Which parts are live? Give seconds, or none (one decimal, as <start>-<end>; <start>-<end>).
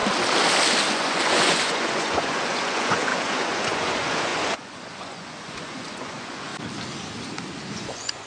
0.0-0.9; 6.5-7.7